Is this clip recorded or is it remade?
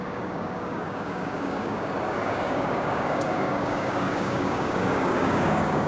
remade